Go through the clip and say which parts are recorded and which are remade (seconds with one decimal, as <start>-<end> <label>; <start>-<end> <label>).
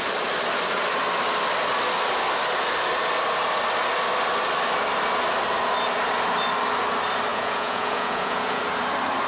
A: 0.0-7.3 recorded; 7.3-8.6 remade; 8.6-9.3 recorded